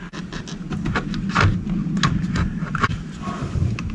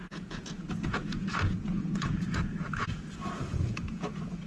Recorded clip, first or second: first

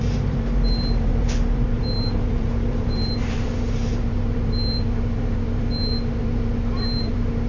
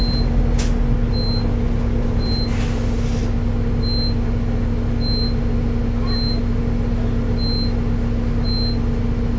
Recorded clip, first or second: second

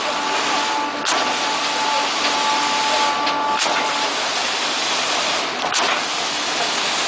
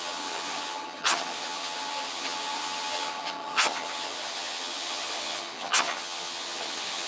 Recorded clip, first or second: first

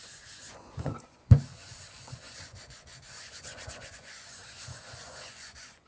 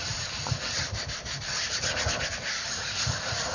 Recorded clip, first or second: second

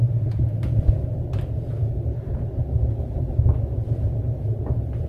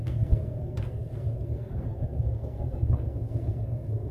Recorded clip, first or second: first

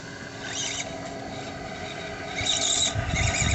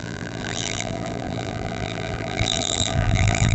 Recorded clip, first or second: first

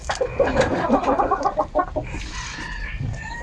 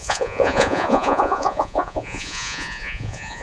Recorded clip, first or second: first